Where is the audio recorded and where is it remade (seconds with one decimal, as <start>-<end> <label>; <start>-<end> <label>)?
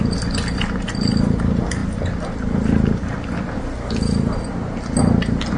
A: 0.0-5.6 recorded